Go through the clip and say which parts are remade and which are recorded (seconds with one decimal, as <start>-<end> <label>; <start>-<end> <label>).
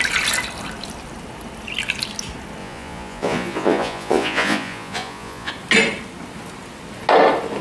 0.0-2.6 recorded; 2.6-5.5 remade; 5.5-7.6 recorded